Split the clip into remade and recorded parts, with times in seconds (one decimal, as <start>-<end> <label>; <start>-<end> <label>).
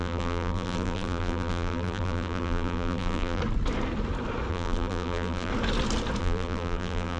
0.0-3.4 remade; 3.4-4.5 recorded; 4.5-5.5 remade; 5.5-6.2 recorded; 6.2-7.2 remade